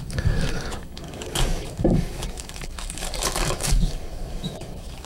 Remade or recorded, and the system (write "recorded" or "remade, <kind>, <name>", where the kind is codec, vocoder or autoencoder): remade, codec, DAC